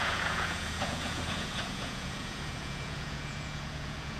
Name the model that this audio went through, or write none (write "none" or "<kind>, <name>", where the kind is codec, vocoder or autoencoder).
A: vocoder, Vocos